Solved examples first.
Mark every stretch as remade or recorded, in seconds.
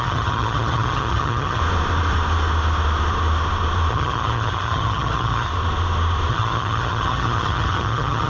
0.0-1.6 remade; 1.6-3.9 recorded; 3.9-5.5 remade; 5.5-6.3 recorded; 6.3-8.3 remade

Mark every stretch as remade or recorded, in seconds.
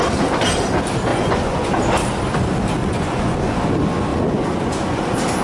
0.0-1.1 recorded; 1.1-1.8 remade; 1.8-2.8 recorded; 2.8-3.6 remade; 3.6-4.1 recorded; 4.1-5.0 remade; 5.0-5.4 recorded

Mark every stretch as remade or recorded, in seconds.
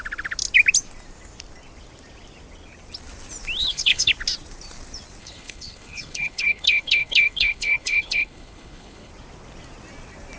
0.0-3.6 recorded; 3.6-4.1 remade; 4.1-5.2 recorded; 5.2-9.1 remade; 9.1-10.4 recorded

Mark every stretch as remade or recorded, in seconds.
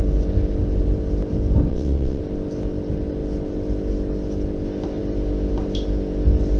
0.0-1.7 recorded; 1.7-2.2 remade; 2.2-6.6 recorded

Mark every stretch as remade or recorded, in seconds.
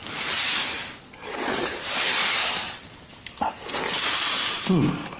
0.0-5.2 recorded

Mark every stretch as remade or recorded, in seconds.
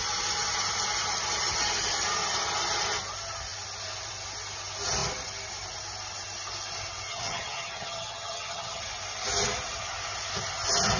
0.0-7.1 recorded; 7.1-8.8 remade; 8.8-11.0 recorded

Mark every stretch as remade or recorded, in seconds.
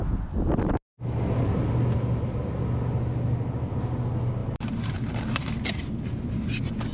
0.0-4.4 recorded; 4.4-5.5 remade; 5.5-6.9 recorded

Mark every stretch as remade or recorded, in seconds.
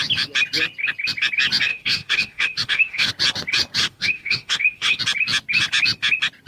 0.0-1.7 recorded; 1.7-3.1 remade; 3.1-3.8 recorded; 3.8-5.0 remade; 5.0-6.5 recorded